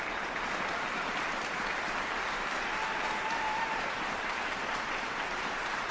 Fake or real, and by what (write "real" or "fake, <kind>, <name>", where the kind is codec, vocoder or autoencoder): fake, vocoder, BigVGAN v2